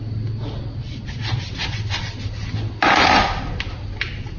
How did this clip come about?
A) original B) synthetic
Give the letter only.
A